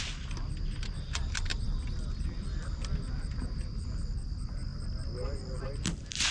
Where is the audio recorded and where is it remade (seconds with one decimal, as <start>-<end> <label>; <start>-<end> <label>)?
0.0-6.3 recorded